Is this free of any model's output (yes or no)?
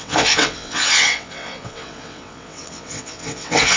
no